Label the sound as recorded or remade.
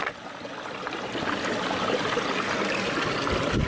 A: recorded